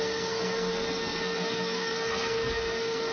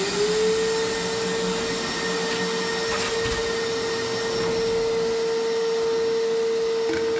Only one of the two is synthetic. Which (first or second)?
first